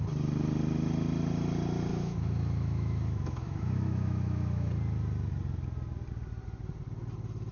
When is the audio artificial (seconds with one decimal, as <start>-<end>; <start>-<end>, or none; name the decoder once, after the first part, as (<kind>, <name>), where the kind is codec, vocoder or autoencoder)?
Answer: 1.9-4.7 (autoencoder, DAC-VAE)